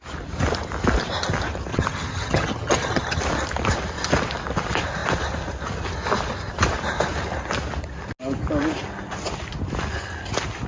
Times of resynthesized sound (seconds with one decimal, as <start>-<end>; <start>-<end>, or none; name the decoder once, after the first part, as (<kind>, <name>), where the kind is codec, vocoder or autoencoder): 1.7-3.2 (vocoder, HiFi-GAN)